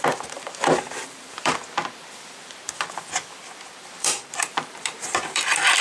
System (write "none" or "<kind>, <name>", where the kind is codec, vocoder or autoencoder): vocoder, BigVGAN v2